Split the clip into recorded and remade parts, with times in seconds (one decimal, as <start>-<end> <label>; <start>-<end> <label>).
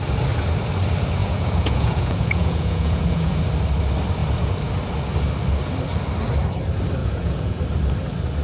0.0-1.2 recorded; 1.2-3.4 remade; 3.4-7.0 recorded; 7.0-7.6 remade; 7.6-8.4 recorded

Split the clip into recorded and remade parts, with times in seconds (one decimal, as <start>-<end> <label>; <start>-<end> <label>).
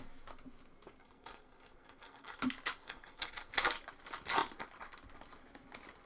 0.0-1.0 recorded; 1.0-2.4 remade; 2.4-2.8 recorded; 2.8-3.5 remade; 3.5-6.1 recorded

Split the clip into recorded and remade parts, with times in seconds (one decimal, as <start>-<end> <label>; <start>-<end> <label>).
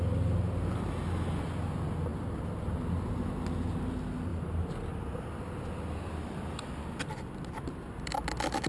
0.0-8.7 recorded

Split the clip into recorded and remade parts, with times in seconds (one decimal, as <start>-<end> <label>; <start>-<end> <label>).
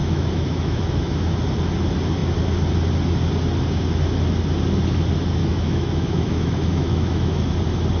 0.0-1.1 remade; 1.1-5.4 recorded; 5.4-7.5 remade; 7.5-8.0 recorded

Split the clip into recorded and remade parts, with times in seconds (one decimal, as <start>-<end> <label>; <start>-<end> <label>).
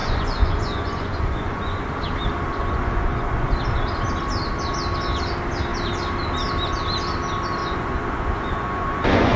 0.0-1.9 remade; 1.9-2.5 recorded; 2.5-3.5 remade; 3.5-7.6 recorded; 7.6-9.4 remade